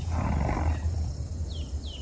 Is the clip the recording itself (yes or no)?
yes